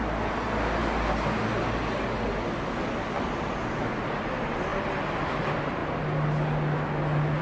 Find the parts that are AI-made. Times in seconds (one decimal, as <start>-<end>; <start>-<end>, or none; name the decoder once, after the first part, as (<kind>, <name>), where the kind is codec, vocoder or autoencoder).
none

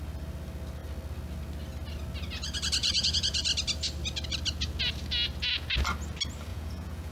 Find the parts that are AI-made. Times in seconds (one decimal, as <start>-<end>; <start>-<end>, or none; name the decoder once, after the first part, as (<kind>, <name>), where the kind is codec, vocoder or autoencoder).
2.8-3.4 (vocoder, Vocos); 6.5-7.1